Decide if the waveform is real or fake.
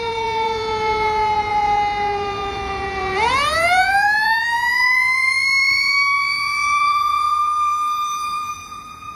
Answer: fake